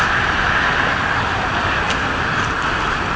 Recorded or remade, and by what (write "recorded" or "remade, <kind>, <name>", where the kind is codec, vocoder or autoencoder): recorded